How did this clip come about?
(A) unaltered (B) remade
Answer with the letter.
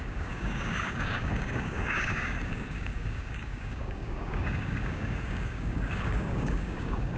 B